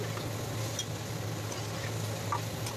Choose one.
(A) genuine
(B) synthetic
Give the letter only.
A